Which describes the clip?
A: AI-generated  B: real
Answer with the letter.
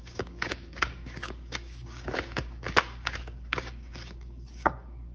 A